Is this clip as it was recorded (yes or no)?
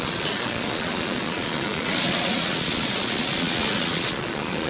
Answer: no